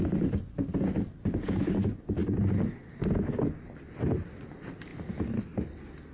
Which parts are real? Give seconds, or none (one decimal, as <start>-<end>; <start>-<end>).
0.0-6.1